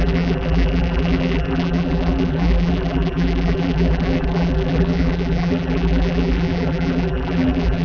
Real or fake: fake